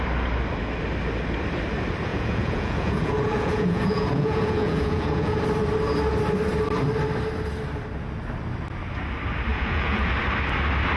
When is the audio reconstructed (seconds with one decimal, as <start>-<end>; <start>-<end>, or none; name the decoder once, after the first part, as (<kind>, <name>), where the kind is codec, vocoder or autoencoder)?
2.1-5.4 (vocoder, Vocos); 9.5-10.1